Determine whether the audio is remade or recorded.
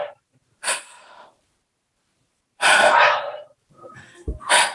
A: remade